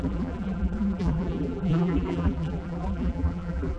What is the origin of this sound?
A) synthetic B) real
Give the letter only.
A